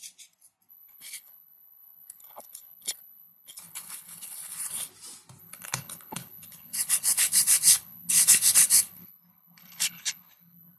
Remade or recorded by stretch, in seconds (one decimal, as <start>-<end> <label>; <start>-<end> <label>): 0.0-0.7 recorded; 0.7-4.9 remade; 4.9-5.4 recorded; 5.4-10.8 remade